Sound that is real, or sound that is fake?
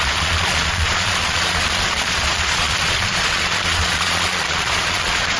fake